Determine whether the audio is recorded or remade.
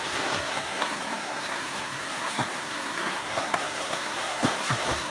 remade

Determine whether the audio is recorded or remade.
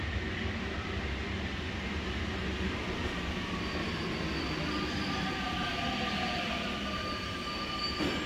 recorded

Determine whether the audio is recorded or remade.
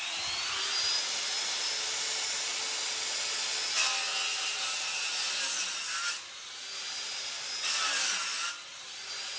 recorded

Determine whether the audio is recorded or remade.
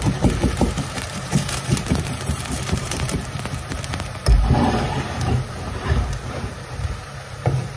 remade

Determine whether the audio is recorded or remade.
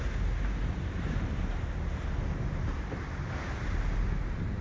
recorded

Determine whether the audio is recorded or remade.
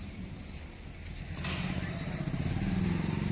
recorded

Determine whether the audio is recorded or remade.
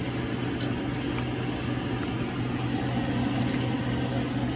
recorded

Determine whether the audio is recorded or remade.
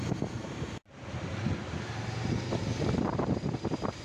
recorded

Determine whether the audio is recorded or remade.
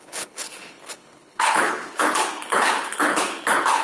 remade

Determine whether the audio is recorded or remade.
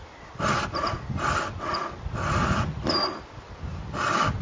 recorded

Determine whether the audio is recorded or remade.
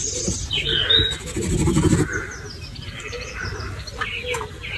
recorded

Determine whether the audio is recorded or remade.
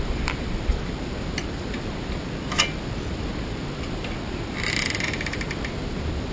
recorded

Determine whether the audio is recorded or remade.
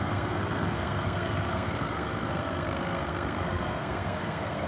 remade